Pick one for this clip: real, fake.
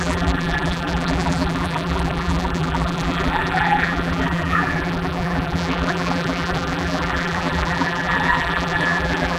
fake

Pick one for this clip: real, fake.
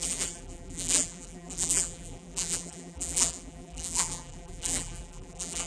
fake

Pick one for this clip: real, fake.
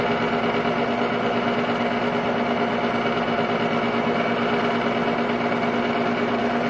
real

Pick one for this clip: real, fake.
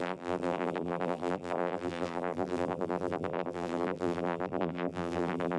fake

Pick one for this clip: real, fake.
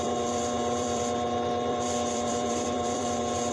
fake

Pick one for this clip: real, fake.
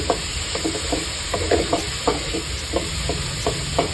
fake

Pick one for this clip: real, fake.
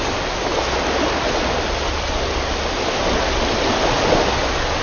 real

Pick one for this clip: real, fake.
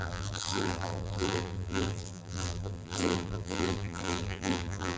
fake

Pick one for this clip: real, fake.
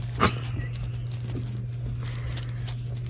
real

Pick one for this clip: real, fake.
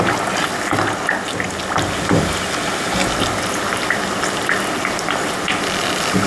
real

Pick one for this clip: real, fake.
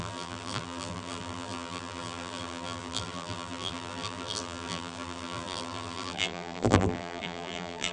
fake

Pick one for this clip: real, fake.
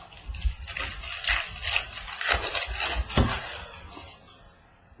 real